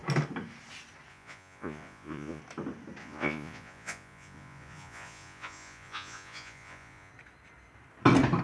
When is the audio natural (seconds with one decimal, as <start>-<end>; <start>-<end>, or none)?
0.0-1.1; 2.4-3.0; 7.1-8.4